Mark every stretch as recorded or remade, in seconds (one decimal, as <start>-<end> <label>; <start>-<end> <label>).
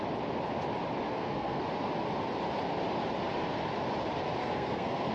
0.0-1.1 recorded; 1.1-1.6 remade; 1.6-4.4 recorded; 4.4-5.1 remade